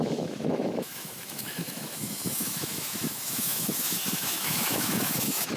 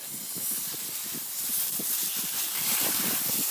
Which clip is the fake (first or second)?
first